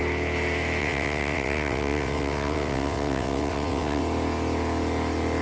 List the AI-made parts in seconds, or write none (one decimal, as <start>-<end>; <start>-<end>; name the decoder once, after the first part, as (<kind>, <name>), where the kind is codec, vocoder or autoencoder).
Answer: 0.8-4.0 (vocoder, WaveNeXt)